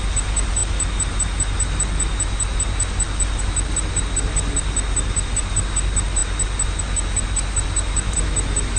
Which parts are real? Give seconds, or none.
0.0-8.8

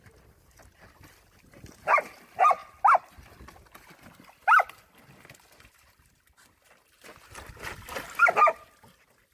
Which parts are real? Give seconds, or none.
0.0-9.3

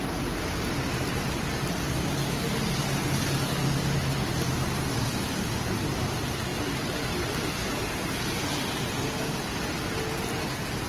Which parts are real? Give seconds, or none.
0.0-10.9

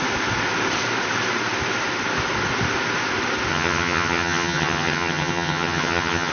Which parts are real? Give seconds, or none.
0.0-3.5